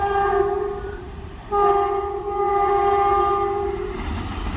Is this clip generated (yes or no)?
yes